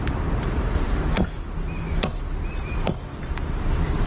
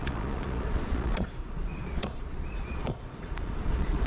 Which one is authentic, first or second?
first